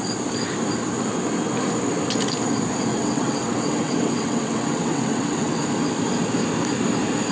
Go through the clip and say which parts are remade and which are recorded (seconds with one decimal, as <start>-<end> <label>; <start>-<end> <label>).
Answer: 0.0-2.9 recorded; 2.9-5.6 remade; 5.6-7.3 recorded

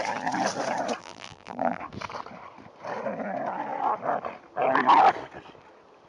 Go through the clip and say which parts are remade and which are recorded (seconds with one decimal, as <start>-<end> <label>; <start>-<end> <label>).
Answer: 0.0-1.0 recorded; 1.0-1.8 remade; 1.8-6.1 recorded

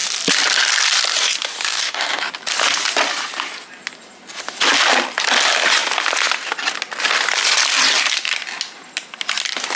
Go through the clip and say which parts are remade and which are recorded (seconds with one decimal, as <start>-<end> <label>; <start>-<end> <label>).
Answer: 0.0-1.7 recorded; 1.7-2.2 remade; 2.2-9.8 recorded

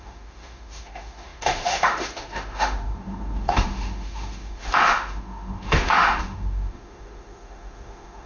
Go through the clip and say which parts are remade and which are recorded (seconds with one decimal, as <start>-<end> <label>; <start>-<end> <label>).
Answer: 0.0-8.3 remade